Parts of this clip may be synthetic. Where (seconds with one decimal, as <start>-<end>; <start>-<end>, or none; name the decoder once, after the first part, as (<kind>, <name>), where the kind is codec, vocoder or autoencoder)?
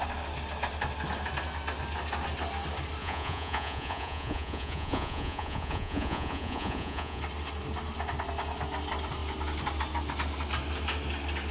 3.0-7.2 (vocoder, Vocos)